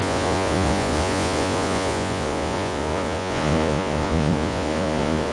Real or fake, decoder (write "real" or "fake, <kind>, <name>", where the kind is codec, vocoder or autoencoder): fake, vocoder, Vocos